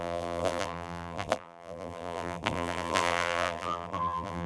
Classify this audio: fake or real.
fake